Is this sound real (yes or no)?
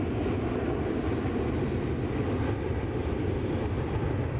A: yes